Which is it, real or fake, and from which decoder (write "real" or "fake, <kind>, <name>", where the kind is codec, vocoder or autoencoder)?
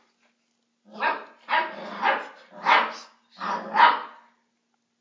real